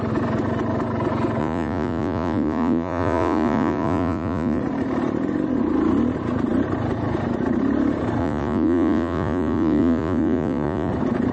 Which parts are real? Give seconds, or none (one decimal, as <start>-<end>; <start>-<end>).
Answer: 0.0-1.4; 4.6-8.2; 10.9-11.3